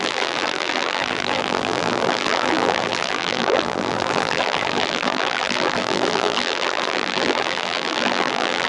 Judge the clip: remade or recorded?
remade